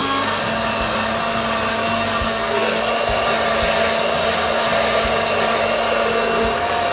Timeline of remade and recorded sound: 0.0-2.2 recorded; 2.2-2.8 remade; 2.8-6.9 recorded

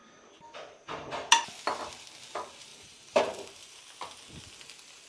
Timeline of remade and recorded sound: 0.0-2.7 recorded; 2.7-3.8 remade; 3.8-5.1 recorded

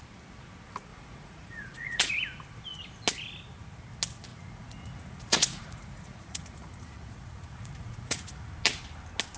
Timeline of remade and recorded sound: 0.0-0.9 recorded; 0.9-2.1 remade; 2.1-4.3 recorded; 4.3-8.5 remade; 8.5-9.4 recorded

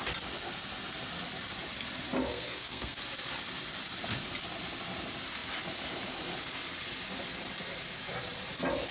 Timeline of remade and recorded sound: 0.0-2.3 recorded; 2.3-3.0 remade; 3.0-8.9 recorded

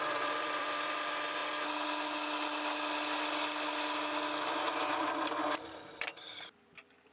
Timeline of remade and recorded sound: 0.0-1.4 remade; 1.4-5.6 recorded; 5.6-7.1 remade

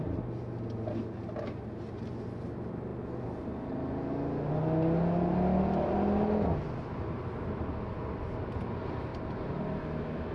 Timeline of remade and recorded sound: 0.0-9.1 recorded; 9.1-9.6 remade; 9.6-10.3 recorded

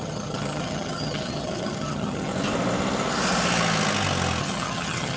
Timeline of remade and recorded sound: 0.0-2.3 remade; 2.3-4.4 recorded; 4.4-5.2 remade

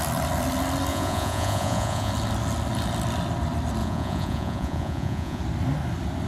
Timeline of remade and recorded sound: 0.0-0.9 recorded; 0.9-2.1 remade; 2.1-3.8 recorded; 3.8-5.4 remade; 5.4-6.3 recorded